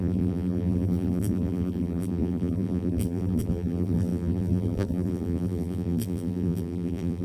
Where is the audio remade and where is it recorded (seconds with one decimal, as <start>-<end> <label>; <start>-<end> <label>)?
0.0-7.2 remade